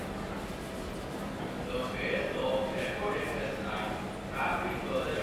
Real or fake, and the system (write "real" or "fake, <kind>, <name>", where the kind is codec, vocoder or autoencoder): real